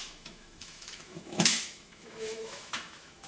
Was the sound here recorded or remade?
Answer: remade